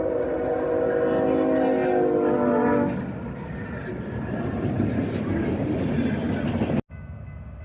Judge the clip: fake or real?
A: real